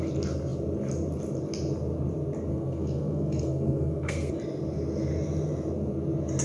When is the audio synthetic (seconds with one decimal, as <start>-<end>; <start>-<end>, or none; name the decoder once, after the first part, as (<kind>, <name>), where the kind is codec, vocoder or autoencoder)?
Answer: 2.5-4.3 (codec, SNAC)